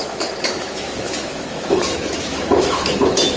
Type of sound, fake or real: fake